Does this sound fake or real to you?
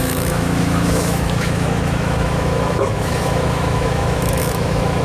fake